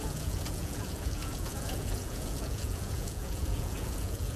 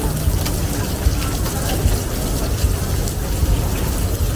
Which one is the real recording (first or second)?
second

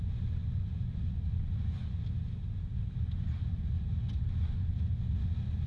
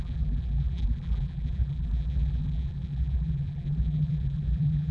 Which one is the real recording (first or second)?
first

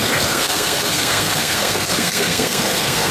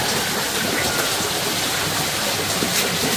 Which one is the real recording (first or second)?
second